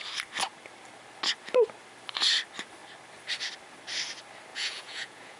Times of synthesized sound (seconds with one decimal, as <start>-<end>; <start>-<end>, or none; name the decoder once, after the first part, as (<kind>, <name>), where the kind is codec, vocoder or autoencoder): 4.5-5.4 (vocoder, Vocos)